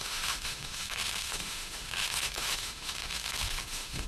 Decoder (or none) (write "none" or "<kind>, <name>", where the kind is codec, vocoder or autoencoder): autoencoder, DAC-VAE